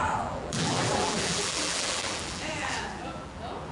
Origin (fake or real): fake